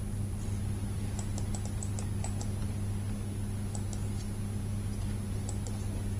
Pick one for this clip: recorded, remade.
recorded